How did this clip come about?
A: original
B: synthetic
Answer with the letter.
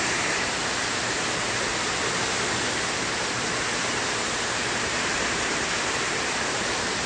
B